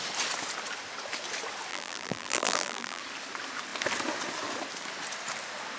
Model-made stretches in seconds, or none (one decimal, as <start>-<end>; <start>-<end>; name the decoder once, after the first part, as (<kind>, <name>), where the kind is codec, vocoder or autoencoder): 1.7-3.0 (vocoder, BigVGAN v2)